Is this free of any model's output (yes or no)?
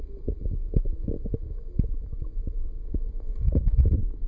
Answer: yes